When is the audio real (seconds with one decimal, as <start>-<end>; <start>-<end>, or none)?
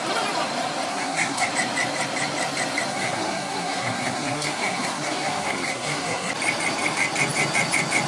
0.0-0.9; 1.5-2.9; 6.3-8.1